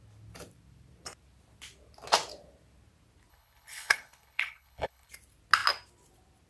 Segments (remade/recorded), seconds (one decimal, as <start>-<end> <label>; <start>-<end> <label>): 0.0-3.3 recorded; 3.3-5.1 remade; 5.1-6.5 recorded